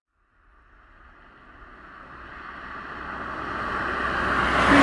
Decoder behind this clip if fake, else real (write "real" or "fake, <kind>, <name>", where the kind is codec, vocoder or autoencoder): real